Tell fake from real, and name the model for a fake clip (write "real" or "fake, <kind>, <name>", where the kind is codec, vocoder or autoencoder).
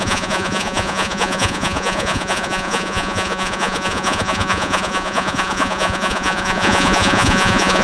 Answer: fake, vocoder, Vocos